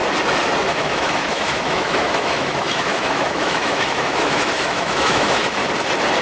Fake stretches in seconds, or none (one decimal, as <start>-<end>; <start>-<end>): 0.7-5.6